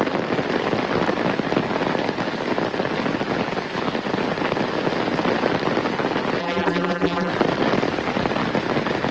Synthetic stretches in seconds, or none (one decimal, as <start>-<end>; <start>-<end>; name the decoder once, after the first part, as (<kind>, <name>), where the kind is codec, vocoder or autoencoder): 6.4-7.3 (vocoder, BigVGAN v2)